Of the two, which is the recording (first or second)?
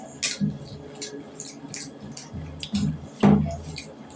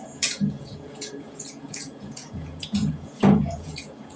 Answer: first